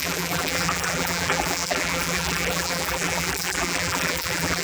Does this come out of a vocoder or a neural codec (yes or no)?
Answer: yes